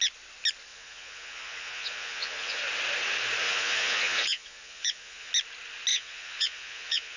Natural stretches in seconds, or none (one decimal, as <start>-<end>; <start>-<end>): 0.0-0.7; 2.6-3.4; 5.3-5.9

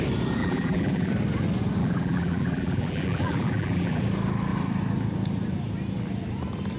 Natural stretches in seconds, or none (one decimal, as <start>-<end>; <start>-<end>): 0.0-0.4; 1.1-1.8; 4.0-6.8

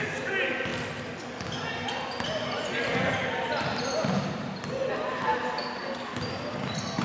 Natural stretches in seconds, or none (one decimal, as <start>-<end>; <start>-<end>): 0.0-7.0

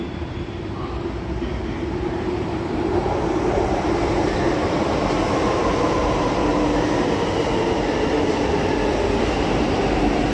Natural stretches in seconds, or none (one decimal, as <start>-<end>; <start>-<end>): 6.5-9.2

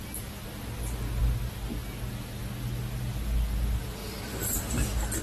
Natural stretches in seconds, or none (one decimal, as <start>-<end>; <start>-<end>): 0.0-4.0; 4.6-5.2

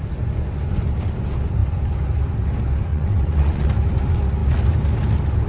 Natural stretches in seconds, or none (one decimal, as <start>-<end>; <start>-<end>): 0.0-2.9; 3.7-5.5